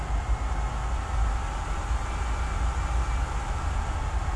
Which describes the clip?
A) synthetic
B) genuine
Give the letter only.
B